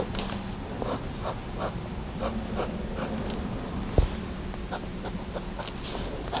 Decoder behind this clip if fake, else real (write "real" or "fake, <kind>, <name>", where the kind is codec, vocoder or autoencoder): real